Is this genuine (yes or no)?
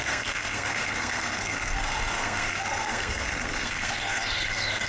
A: no